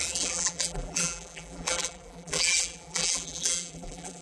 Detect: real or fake fake